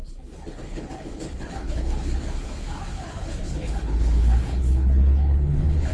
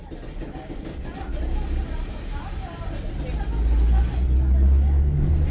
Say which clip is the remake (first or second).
first